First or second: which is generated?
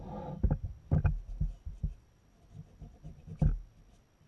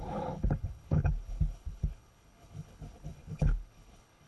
second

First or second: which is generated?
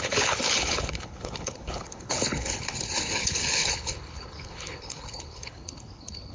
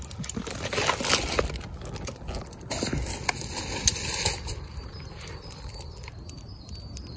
first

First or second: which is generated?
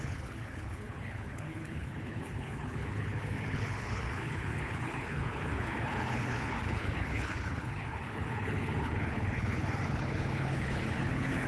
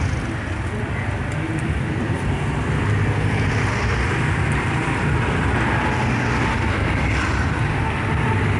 first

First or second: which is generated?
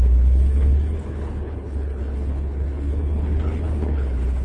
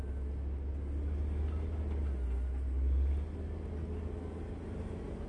first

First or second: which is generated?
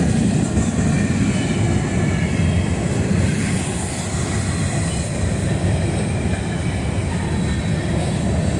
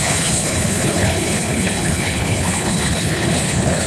second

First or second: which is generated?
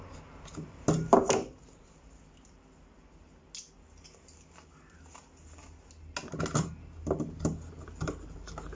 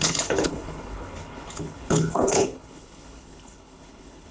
second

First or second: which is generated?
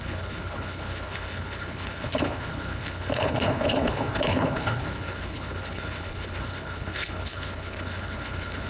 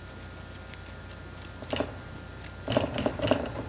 first